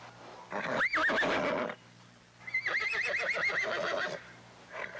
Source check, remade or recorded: recorded